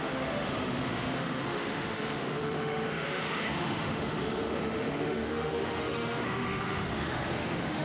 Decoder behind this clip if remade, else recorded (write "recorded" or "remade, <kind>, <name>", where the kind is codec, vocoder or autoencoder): remade, autoencoder, DAC-VAE